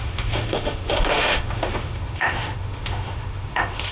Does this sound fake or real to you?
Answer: fake